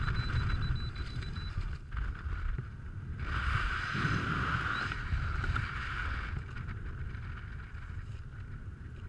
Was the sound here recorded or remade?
recorded